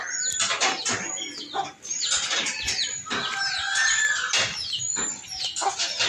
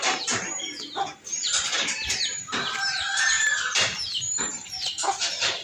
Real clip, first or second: first